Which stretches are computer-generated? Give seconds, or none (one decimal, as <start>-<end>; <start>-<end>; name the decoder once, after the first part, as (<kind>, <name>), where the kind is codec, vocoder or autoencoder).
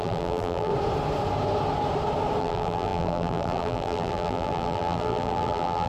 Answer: 0.0-0.7 (vocoder, BigVGAN v2); 2.4-5.9